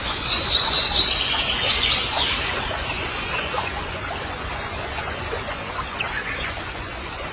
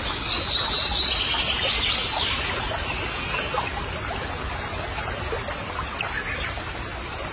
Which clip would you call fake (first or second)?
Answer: first